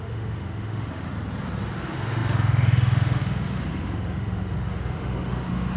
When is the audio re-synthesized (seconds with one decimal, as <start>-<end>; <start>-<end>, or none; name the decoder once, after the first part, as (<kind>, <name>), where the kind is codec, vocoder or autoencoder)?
0.0-1.1 (autoencoder, DAC-VAE); 1.8-5.8